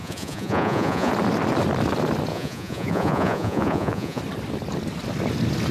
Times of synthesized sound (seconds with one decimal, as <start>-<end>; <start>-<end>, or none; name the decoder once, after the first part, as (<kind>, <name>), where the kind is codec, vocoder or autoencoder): 0.0-1.1 (vocoder, Vocos); 2.3-4.2